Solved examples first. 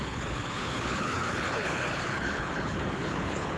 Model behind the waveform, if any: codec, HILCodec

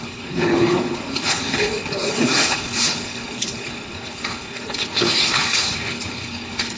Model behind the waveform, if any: codec, HILCodec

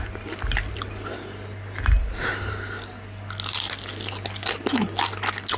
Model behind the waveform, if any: none